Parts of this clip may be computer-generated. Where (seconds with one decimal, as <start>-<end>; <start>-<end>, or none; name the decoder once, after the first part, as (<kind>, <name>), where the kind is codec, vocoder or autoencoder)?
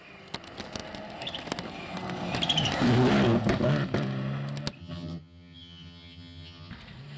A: 4.8-6.7 (vocoder, HiFi-GAN)